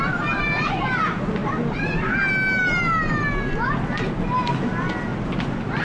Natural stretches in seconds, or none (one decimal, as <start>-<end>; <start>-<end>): 0.0-5.8